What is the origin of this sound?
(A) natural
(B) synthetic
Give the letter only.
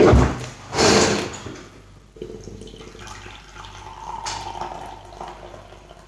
A